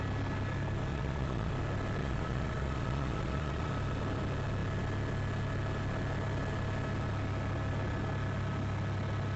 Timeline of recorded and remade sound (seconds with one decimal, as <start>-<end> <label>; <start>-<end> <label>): 0.0-0.9 recorded; 0.9-1.5 remade; 1.5-2.0 recorded; 2.0-3.7 remade; 3.7-9.4 recorded